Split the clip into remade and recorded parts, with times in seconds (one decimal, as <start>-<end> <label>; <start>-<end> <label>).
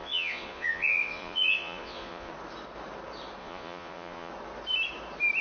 0.0-2.3 remade; 2.3-3.4 recorded; 3.4-4.3 remade; 4.3-5.4 recorded